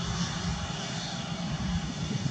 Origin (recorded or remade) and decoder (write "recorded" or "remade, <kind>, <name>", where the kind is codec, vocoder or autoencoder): recorded